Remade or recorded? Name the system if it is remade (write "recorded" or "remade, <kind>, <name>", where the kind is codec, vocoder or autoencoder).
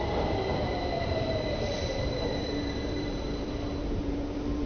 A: remade, vocoder, BigVGAN v2